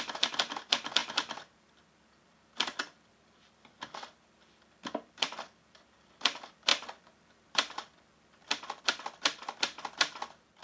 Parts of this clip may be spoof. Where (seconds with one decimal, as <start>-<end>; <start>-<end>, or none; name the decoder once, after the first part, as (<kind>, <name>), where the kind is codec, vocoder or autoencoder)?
0.0-10.6 (vocoder, BigVGAN v2)